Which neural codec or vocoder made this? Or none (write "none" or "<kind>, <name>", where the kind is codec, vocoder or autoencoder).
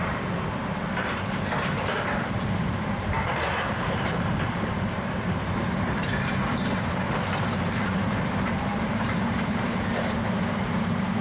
vocoder, BigVGAN v2